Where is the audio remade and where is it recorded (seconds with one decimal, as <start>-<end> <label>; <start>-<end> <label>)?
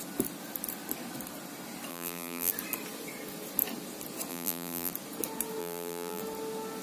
0.0-1.9 recorded; 1.9-2.5 remade; 2.5-4.3 recorded; 4.3-4.9 remade; 4.9-5.6 recorded; 5.6-6.2 remade; 6.2-6.8 recorded